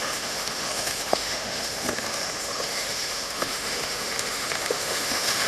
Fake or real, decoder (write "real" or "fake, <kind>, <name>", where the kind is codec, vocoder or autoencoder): fake, autoencoder, DAC-VAE